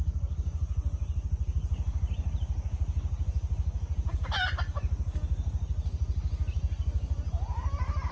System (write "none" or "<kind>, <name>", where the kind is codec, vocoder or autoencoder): none